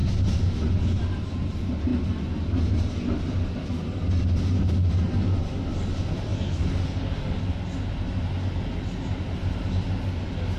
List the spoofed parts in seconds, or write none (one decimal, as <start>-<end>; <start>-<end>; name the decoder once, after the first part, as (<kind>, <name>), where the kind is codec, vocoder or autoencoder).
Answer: 0.0-0.6 (codec, DAC); 6.3-7.4